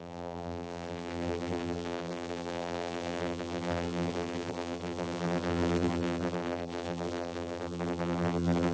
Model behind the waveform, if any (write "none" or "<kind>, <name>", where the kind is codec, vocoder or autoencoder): vocoder, BigVGAN v2